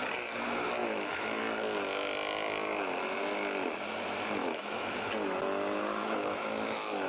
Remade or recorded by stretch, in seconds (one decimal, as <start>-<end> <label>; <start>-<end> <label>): 0.0-0.8 recorded; 0.8-1.4 remade; 1.4-4.4 recorded; 4.4-5.1 remade; 5.1-6.0 recorded; 6.0-7.1 remade

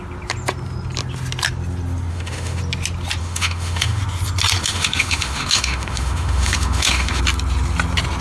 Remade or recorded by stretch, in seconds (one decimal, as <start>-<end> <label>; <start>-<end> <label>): 0.0-2.1 recorded; 2.1-2.6 remade; 2.6-3.2 recorded; 3.2-4.0 remade; 4.0-4.6 recorded; 4.6-7.2 remade; 7.2-8.2 recorded

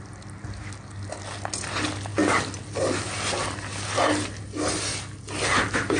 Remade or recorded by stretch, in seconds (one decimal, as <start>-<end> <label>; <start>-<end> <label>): 0.0-6.0 recorded

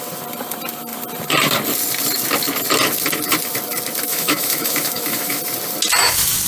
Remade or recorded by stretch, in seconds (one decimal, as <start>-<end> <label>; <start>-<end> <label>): 0.0-4.1 recorded; 4.1-5.4 remade; 5.4-6.5 recorded

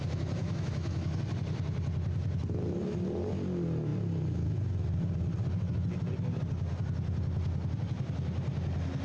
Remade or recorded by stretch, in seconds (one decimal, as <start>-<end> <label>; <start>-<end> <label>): 0.0-0.4 recorded; 0.4-1.2 remade; 1.2-9.0 recorded

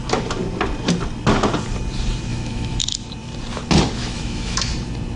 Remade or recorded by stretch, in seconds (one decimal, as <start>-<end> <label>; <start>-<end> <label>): 0.0-2.3 recorded; 2.3-2.8 remade; 2.8-4.0 recorded; 4.0-4.7 remade; 4.7-5.2 recorded

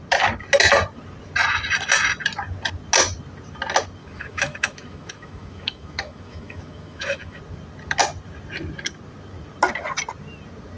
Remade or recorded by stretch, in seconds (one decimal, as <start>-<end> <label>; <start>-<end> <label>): 0.0-4.0 recorded; 4.0-7.4 remade; 7.4-10.8 recorded